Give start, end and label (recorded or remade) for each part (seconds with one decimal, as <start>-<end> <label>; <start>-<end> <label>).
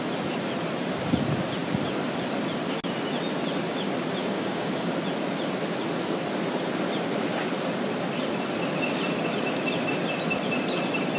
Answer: 0.0-4.2 recorded; 4.2-4.9 remade; 4.9-11.2 recorded